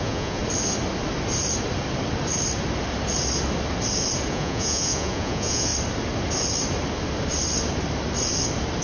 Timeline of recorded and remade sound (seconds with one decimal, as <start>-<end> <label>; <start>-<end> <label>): 0.0-0.4 remade; 0.4-4.3 recorded; 4.3-5.7 remade; 5.7-8.8 recorded